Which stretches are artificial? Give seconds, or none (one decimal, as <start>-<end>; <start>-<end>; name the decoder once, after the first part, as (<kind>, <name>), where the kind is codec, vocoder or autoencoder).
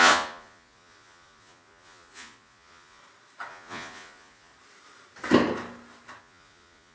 0.0-3.0 (vocoder, Vocos); 3.5-4.5; 6.2-6.9